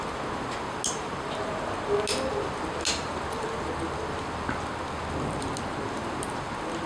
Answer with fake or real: real